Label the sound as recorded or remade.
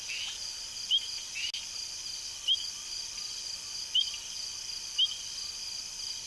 recorded